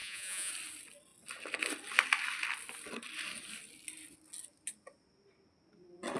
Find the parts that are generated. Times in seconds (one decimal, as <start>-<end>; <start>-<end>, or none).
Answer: 0.0-0.5